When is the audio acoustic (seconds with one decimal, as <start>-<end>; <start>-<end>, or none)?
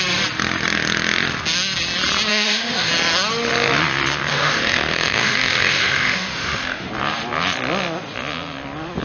0.0-2.3; 2.9-4.3; 6.9-9.0